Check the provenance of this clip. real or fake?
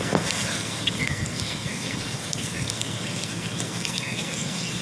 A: fake